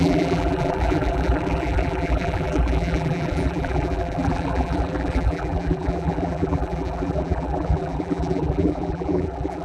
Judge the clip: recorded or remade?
remade